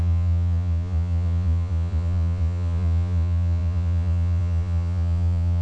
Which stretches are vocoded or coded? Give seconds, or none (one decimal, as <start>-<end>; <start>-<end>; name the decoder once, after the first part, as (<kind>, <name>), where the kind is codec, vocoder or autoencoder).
0.0-5.6 (vocoder, Vocos)